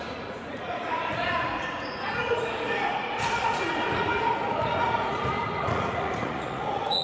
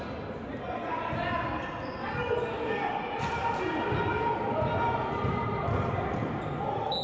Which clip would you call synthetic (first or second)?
first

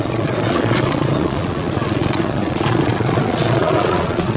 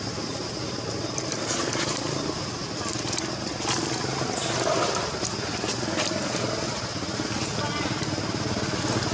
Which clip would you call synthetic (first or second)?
first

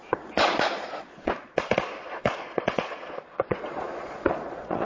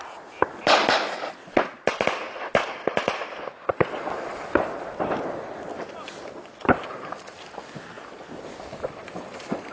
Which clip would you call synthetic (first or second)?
first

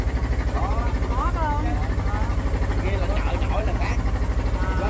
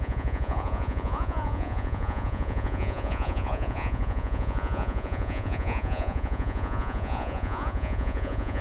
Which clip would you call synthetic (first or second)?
second